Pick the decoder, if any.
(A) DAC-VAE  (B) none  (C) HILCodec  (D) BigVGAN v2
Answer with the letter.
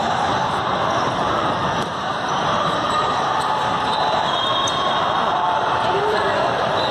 D